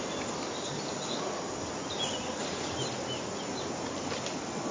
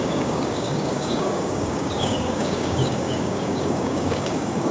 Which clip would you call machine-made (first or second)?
second